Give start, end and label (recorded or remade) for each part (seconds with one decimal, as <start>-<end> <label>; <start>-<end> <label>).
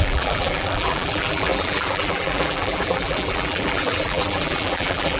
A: 0.0-5.2 remade